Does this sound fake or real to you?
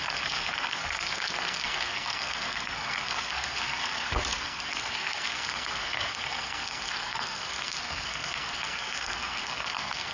fake